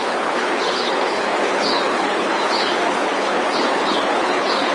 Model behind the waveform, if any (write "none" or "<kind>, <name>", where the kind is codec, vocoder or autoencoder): codec, HILCodec